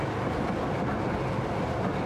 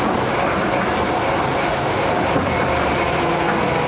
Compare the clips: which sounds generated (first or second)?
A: second